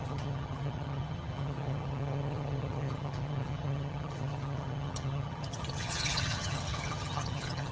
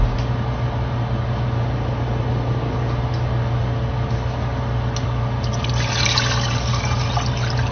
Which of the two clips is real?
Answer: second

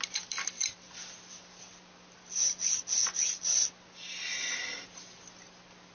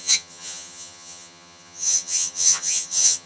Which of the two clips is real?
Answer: first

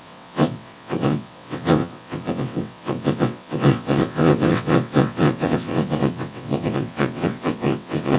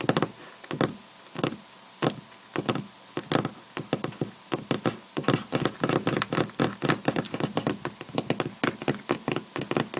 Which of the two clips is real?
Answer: second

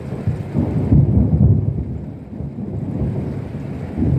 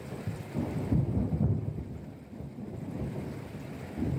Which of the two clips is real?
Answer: first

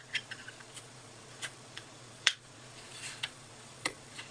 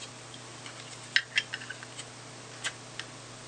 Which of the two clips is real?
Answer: second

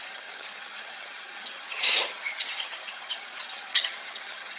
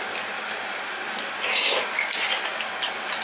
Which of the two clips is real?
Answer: second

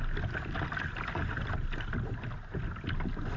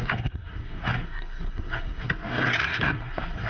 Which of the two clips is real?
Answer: first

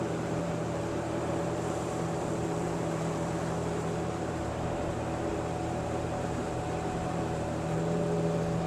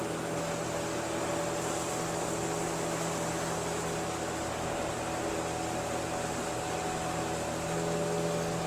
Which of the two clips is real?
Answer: second